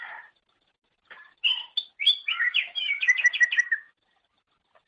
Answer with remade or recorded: recorded